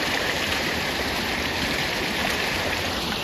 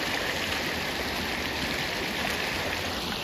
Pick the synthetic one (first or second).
first